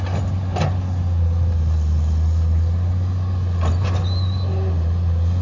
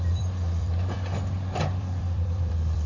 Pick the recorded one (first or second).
first